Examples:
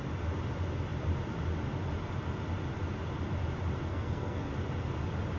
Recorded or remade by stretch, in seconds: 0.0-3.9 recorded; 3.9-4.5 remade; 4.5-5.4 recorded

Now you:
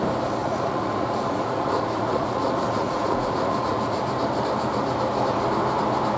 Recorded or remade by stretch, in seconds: 0.0-0.4 recorded; 0.4-4.1 remade; 4.1-6.2 recorded

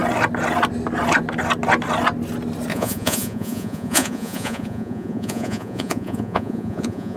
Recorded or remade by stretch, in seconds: 0.0-2.7 recorded; 2.7-7.2 remade

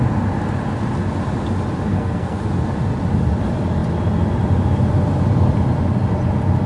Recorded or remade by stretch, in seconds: 0.0-1.9 recorded; 1.9-2.4 remade; 2.4-6.7 recorded

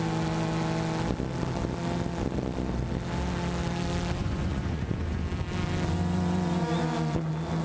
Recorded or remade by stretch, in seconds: 0.0-4.2 recorded; 4.2-5.2 remade; 5.2-7.6 recorded

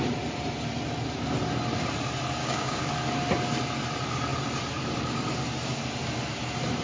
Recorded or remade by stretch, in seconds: 0.0-2.4 recorded; 2.4-2.9 remade; 2.9-6.8 recorded

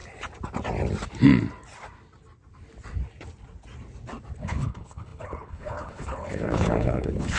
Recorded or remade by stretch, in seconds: 0.0-4.4 recorded; 4.4-7.4 remade